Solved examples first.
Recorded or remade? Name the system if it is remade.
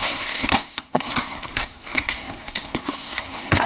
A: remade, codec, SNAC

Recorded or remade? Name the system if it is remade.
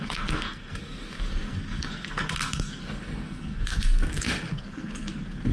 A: remade, codec, SNAC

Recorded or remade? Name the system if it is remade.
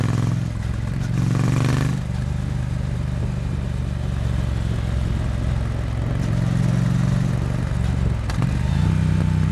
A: recorded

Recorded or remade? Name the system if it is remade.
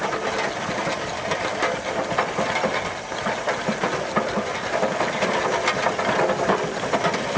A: recorded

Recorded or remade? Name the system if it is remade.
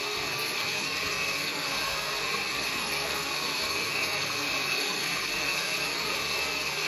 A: remade, codec, SNAC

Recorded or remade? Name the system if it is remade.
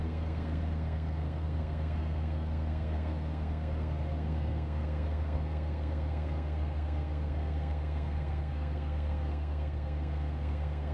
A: remade, codec, SNAC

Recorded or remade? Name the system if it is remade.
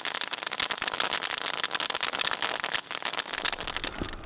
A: recorded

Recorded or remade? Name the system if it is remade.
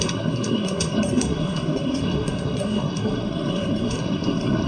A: remade, codec, SNAC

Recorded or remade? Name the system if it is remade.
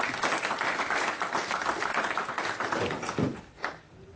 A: recorded